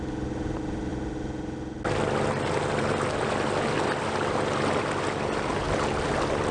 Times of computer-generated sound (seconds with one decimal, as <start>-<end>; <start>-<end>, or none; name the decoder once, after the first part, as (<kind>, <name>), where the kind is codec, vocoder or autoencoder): none